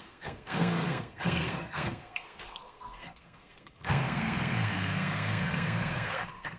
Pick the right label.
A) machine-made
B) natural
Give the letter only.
A